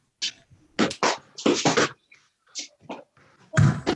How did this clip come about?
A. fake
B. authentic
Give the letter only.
B